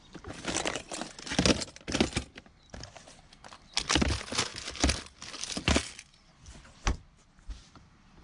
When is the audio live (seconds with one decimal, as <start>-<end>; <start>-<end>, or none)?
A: 0.0-8.2